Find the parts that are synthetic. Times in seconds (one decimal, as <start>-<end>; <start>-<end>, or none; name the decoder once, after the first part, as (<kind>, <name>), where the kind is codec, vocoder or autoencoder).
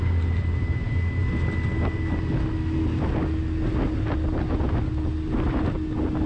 none